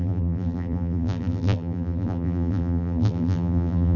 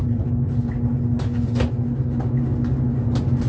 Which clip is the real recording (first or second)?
second